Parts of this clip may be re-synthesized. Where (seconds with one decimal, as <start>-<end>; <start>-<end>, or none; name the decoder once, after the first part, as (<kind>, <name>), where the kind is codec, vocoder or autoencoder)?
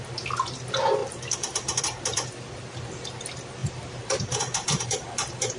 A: 1.0-1.8 (vocoder, BigVGAN v2); 3.6-5.6